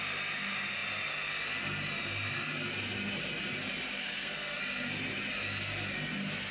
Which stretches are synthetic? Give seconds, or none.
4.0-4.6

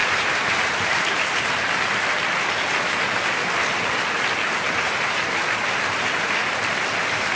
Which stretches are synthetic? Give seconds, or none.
0.0-1.4

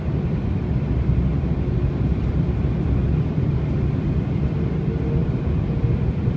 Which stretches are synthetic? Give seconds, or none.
none

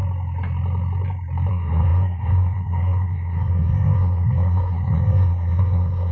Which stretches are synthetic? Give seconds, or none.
1.5-6.1

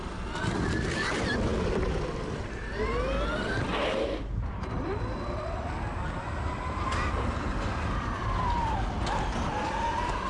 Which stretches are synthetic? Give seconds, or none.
none

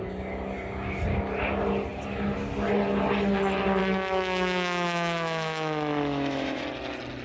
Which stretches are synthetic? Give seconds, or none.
3.8-6.6

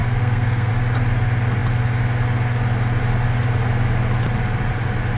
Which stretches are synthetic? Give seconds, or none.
0.0-0.7

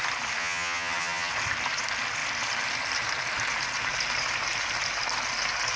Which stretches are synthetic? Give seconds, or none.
0.4-1.3